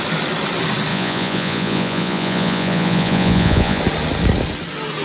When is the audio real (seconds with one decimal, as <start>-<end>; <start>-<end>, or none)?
0.0-0.9; 3.8-5.0